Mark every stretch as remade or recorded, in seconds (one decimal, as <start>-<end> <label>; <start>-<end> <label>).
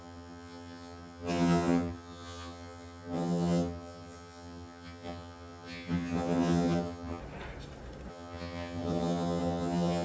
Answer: 0.0-7.2 remade; 7.2-8.1 recorded; 8.1-10.0 remade